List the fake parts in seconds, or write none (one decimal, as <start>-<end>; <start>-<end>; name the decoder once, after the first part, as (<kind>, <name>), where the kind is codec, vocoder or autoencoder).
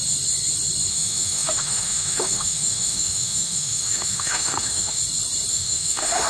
0.9-5.0 (autoencoder, DAC-VAE); 5.5-6.3